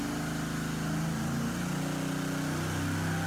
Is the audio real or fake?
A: real